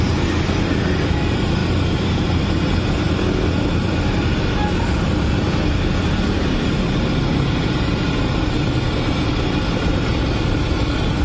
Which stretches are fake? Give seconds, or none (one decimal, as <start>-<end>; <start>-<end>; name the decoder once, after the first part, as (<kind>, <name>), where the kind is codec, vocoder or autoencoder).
none